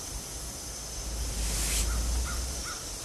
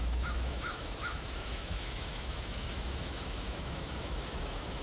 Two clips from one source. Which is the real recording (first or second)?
first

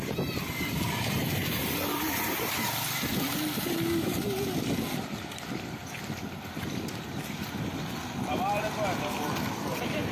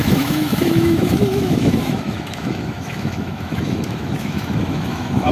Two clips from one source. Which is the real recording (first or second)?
first